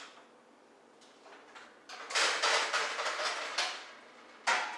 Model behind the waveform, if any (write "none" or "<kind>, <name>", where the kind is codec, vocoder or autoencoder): none